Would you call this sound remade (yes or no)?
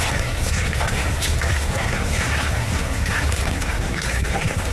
yes